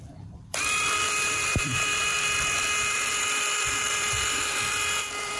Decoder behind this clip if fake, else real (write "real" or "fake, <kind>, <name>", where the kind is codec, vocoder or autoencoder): fake, vocoder, BigVGAN v2